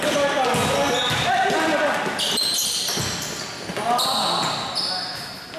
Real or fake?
real